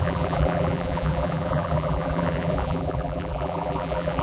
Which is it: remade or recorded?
remade